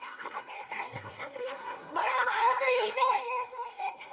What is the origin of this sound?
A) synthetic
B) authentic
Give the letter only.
A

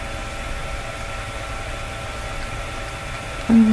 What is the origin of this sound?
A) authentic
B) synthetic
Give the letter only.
A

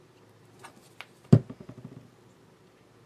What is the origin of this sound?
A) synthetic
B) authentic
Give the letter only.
B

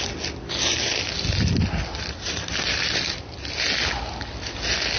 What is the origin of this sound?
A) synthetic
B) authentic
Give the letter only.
B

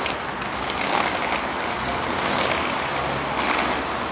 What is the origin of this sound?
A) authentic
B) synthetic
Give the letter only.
A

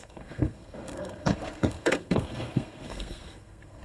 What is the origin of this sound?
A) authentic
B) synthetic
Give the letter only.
B